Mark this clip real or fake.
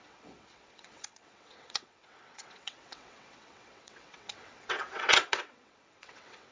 fake